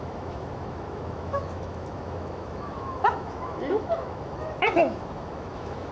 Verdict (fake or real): fake